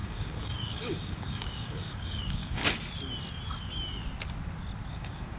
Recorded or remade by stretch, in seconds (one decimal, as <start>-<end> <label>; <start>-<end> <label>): 0.0-2.6 remade; 2.6-4.9 recorded; 4.9-5.4 remade